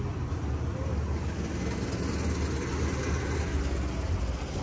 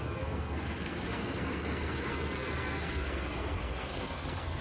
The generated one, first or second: second